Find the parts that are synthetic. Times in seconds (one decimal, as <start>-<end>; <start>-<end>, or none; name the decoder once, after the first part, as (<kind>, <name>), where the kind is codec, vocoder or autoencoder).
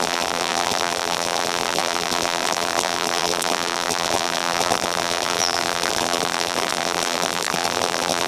0.0-8.3 (vocoder, BigVGAN v2)